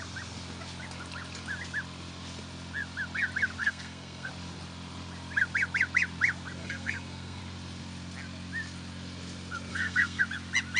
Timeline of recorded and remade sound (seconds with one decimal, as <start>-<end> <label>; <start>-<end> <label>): 0.0-3.6 recorded; 3.6-4.3 remade; 4.3-6.6 recorded; 6.6-7.4 remade; 7.4-9.7 recorded; 9.7-10.2 remade; 10.2-10.8 recorded